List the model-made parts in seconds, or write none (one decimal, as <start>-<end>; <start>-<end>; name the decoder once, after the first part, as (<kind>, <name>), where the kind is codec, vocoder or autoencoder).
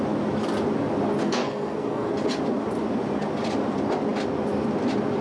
1.2-2.1 (codec, SNAC)